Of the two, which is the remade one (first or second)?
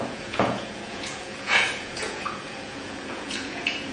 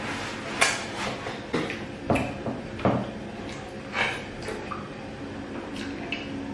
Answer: first